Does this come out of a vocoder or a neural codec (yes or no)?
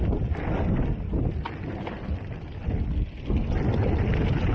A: no